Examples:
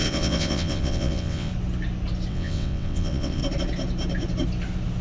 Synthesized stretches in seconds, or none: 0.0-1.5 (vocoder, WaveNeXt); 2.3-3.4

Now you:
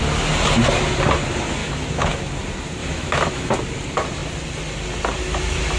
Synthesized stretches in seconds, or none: 1.6-2.2 (autoencoder, DAC-VAE); 2.8-3.5